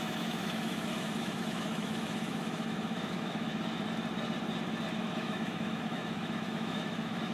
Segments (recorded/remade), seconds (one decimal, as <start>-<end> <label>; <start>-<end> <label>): 0.0-3.5 remade; 3.5-5.0 recorded; 5.0-7.3 remade